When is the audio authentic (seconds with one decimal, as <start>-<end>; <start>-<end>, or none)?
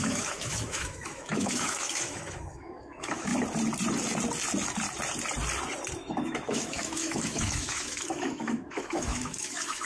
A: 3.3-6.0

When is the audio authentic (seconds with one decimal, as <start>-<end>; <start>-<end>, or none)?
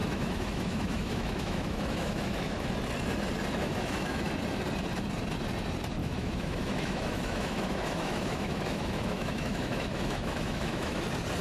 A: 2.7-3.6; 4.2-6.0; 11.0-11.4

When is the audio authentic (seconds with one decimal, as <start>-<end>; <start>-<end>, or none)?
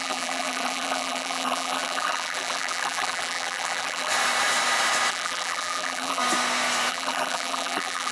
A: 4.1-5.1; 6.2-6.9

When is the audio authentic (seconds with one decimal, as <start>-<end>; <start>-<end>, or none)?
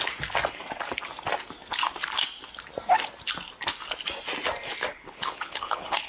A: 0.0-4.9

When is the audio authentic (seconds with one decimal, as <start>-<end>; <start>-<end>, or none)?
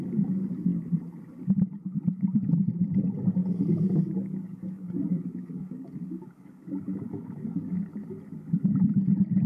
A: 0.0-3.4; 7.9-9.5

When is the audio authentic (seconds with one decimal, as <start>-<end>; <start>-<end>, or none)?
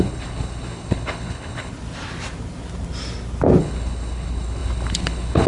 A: 1.7-3.6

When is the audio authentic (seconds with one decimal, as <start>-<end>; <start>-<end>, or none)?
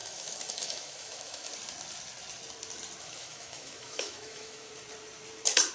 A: 1.5-3.2; 4.7-5.7